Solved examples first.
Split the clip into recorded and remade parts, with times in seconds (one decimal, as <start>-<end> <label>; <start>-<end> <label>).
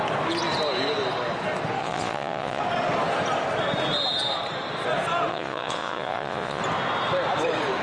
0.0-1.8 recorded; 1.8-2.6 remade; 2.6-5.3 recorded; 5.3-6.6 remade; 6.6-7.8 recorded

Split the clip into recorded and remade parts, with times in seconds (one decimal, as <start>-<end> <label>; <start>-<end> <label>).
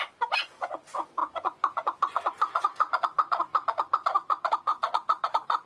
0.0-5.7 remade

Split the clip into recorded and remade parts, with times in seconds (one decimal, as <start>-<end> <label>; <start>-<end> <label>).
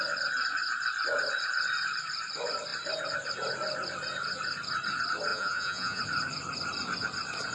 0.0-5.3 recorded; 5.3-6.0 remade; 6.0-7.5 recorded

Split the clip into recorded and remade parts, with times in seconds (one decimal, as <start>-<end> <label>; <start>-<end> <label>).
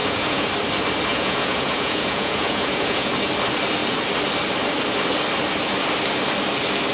0.0-0.5 remade; 0.5-1.1 recorded; 1.1-3.1 remade; 3.1-6.9 recorded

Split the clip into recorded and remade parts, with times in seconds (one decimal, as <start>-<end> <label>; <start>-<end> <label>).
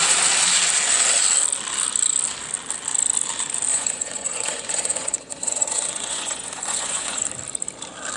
0.0-3.7 recorded; 3.7-7.2 remade; 7.2-8.2 recorded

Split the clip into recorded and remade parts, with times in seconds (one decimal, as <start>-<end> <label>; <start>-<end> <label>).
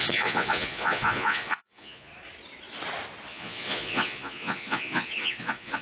0.0-2.1 remade; 2.1-3.3 recorded; 3.3-5.8 remade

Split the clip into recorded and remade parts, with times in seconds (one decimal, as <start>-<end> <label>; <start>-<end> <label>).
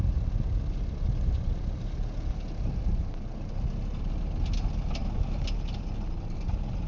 0.0-6.9 recorded